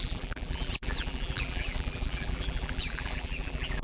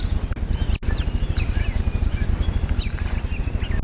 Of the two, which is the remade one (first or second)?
first